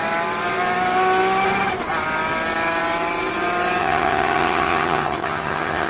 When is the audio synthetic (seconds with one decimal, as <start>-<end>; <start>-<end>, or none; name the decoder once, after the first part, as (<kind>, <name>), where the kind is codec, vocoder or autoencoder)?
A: 3.8-5.9 (vocoder, HiFi-GAN)